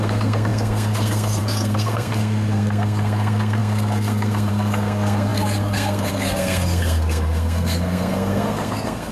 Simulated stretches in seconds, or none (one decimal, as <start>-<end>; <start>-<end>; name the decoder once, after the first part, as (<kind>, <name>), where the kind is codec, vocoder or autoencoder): 0.0-9.1 (codec, SNAC)